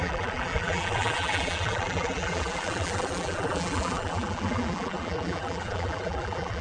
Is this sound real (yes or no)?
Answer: no